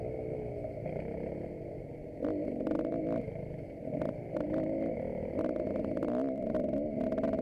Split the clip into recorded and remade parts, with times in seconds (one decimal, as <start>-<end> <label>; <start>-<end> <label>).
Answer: 0.0-7.4 recorded